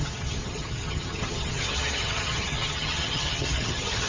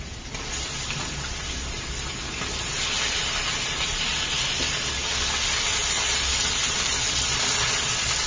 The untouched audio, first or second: second